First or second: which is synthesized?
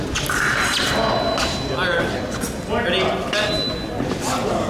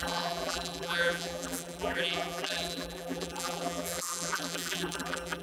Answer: second